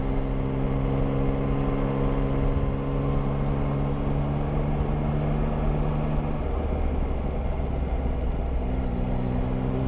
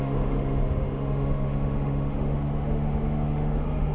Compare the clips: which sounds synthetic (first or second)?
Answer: second